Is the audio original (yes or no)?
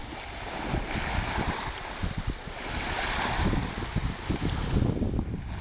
yes